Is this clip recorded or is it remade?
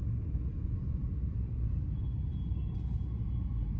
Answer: recorded